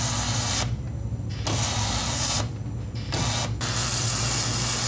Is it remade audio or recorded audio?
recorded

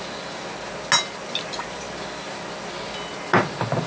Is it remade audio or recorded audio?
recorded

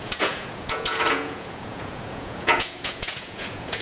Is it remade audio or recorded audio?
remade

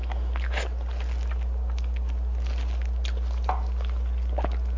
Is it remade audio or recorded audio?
recorded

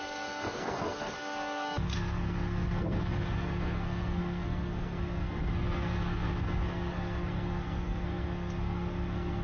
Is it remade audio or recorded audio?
remade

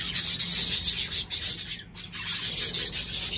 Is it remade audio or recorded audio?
recorded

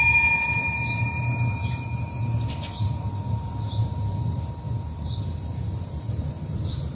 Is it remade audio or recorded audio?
remade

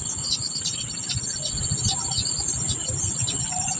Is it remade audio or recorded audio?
recorded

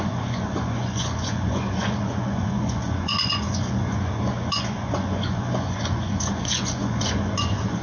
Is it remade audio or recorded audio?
remade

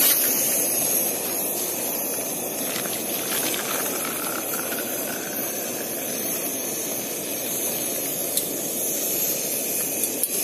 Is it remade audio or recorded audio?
recorded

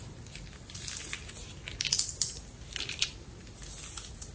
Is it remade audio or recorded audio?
recorded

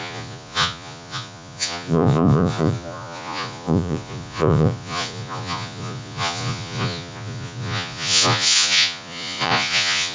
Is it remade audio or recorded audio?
remade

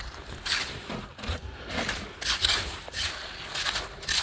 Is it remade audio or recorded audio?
recorded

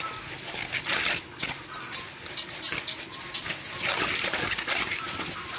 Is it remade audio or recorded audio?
recorded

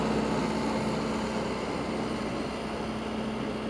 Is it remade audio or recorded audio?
recorded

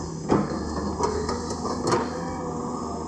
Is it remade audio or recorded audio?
recorded